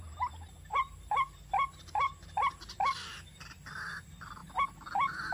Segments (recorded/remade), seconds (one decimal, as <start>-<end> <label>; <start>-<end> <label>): 0.0-5.3 recorded